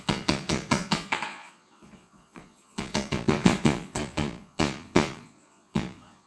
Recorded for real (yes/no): no